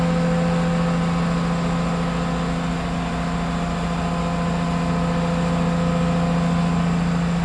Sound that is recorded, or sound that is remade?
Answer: recorded